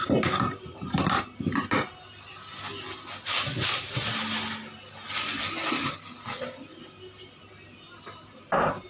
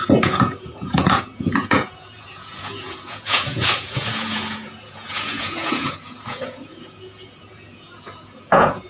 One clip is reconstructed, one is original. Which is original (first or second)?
first